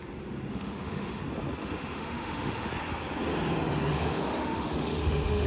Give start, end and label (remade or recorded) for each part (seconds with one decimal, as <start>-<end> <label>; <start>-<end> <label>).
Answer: 0.0-0.5 recorded; 0.5-1.2 remade; 1.2-1.6 recorded; 1.6-2.7 remade; 2.7-3.9 recorded; 3.9-5.5 remade

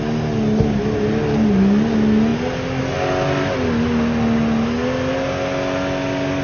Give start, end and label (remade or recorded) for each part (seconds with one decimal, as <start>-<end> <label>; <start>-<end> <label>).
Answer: 0.0-6.4 recorded

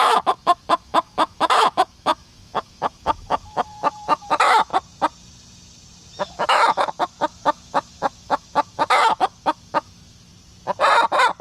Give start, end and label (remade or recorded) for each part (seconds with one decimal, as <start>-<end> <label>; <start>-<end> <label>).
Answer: 0.0-4.7 remade; 4.7-6.2 recorded; 6.2-10.3 remade; 10.3-11.4 recorded